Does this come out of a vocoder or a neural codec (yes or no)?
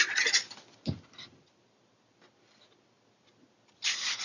no